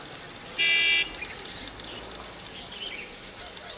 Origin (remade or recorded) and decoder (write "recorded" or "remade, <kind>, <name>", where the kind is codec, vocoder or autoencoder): recorded